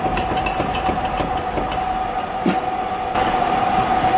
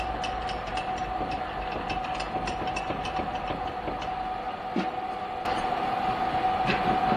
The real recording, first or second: second